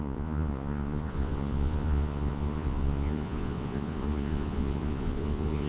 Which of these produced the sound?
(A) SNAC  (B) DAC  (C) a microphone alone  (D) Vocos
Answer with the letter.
D